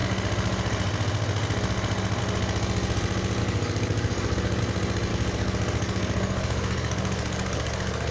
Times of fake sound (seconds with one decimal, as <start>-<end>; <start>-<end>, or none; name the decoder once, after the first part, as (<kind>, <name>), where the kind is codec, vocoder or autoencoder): 3.4-4.6 (codec, DAC); 5.1-8.1